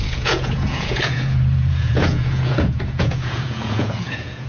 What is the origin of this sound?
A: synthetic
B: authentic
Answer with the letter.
A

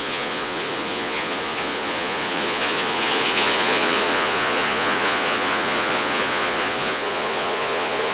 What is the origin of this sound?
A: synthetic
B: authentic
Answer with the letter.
A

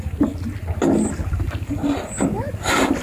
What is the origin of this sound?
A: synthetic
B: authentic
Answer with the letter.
B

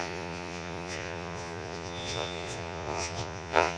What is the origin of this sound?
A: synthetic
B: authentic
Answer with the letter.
A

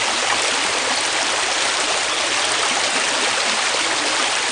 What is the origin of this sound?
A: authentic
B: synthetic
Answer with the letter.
A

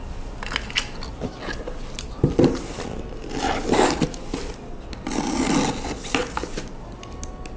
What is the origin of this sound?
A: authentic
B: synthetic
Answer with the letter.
A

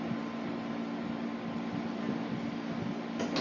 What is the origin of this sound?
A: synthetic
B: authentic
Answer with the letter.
B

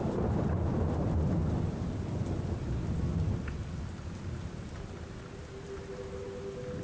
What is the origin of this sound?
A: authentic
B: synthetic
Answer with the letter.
A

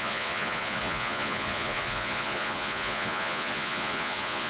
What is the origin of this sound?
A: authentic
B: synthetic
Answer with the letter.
B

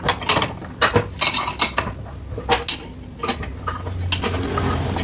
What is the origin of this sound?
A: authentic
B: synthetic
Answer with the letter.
A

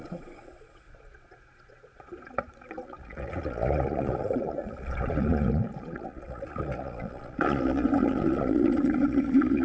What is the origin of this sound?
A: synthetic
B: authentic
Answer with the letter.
A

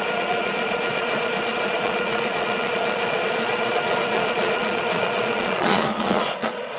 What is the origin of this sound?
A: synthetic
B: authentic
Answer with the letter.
A